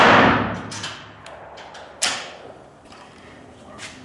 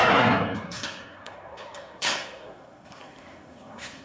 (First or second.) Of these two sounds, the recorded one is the first